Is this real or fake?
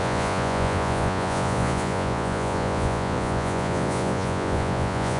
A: fake